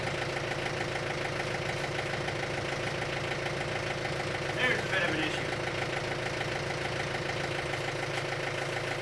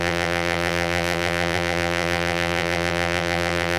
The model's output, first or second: second